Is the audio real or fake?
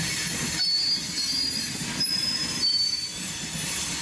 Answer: real